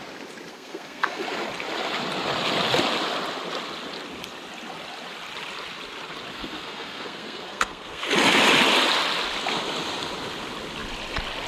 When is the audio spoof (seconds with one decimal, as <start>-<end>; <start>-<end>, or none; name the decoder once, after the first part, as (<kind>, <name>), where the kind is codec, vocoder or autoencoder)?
0.5-1.2 (codec, SNAC); 6.3-8.1